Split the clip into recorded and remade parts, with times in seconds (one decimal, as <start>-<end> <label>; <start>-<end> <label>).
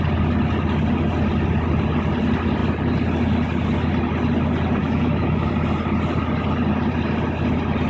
0.0-4.8 recorded; 4.8-5.5 remade; 5.5-7.9 recorded